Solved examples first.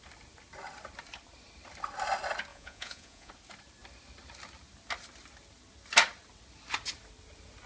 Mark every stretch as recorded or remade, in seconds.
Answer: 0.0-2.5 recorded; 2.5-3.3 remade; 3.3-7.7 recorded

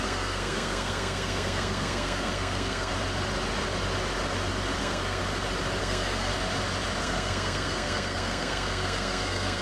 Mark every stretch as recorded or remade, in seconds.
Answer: 0.0-2.9 remade; 2.9-4.8 recorded; 4.8-5.2 remade; 5.2-5.8 recorded; 5.8-6.3 remade; 6.3-7.0 recorded; 7.0-9.6 remade

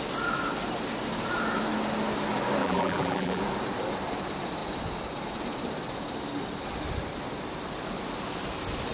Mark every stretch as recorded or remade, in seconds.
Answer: 0.0-2.6 recorded; 2.6-3.4 remade; 3.4-8.9 recorded

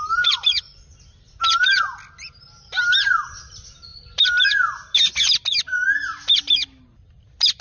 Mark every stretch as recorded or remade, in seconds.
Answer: 0.0-7.6 recorded

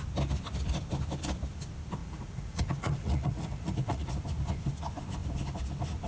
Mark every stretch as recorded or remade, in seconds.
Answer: 0.0-2.0 recorded; 2.0-4.1 remade; 4.1-6.1 recorded

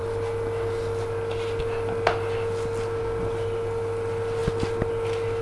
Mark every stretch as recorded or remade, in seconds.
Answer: 0.0-5.4 recorded

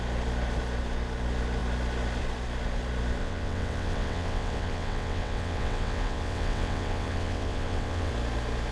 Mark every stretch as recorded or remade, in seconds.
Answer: 0.0-3.2 recorded; 3.2-8.1 remade; 8.1-8.7 recorded